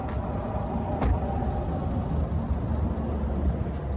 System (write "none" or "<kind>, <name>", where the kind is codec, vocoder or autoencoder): none